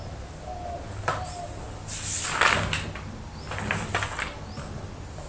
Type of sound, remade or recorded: recorded